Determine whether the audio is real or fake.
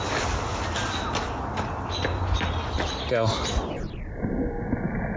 real